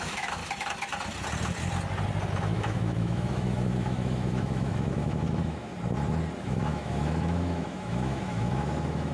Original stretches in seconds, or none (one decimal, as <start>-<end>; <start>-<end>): 0.4-2.4; 5.7-6.4